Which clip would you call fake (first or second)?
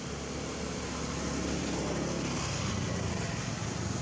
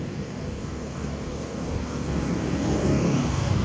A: second